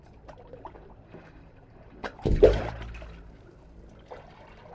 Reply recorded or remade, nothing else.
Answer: remade